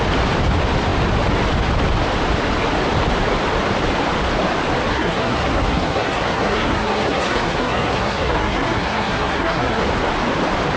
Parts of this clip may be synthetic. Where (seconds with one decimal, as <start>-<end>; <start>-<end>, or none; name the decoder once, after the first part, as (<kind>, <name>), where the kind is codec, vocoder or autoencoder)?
4.9-9.8 (codec, SNAC)